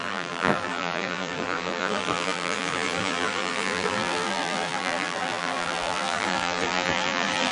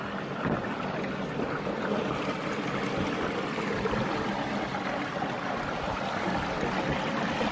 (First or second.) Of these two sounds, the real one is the second